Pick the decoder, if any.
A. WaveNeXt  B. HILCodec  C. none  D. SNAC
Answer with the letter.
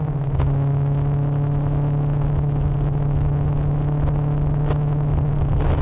C